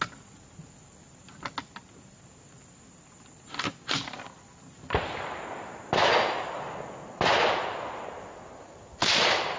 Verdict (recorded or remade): recorded